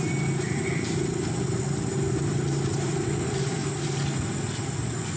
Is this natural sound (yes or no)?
yes